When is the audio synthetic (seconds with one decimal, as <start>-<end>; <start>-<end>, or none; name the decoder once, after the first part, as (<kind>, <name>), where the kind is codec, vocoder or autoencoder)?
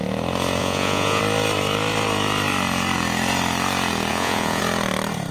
0.6-1.2 (vocoder, Vocos); 4.1-4.6